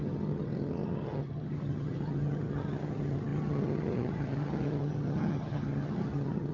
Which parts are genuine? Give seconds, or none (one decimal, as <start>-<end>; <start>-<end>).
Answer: none

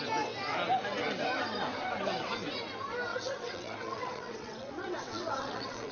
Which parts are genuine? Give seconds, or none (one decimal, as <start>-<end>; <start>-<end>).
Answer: 0.0-3.1

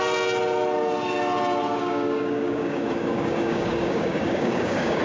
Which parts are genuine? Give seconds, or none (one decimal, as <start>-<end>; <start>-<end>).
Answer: 0.0-1.8

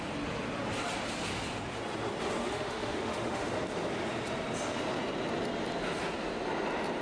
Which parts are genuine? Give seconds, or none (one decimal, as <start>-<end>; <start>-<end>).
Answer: 0.0-2.4; 3.5-7.0

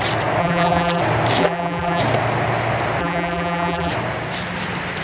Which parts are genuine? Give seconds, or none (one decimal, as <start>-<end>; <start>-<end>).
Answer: 0.0-0.4; 1.0-1.4; 2.0-3.0; 3.9-5.0

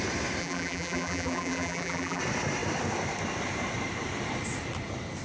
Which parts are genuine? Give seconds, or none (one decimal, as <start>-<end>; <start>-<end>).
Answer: 0.0-0.4; 2.2-5.2

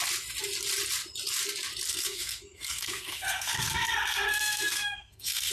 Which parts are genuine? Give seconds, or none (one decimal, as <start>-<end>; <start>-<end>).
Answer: 0.0-1.9

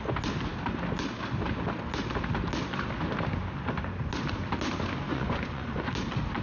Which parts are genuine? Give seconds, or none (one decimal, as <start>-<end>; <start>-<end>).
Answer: 0.0-5.1; 5.9-6.4